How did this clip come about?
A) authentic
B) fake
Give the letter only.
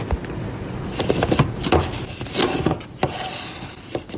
A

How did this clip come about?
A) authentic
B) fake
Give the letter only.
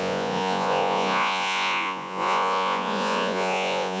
B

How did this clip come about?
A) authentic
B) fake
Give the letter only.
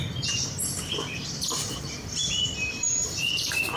B